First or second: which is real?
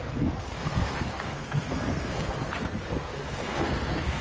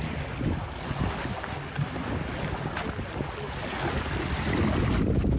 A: second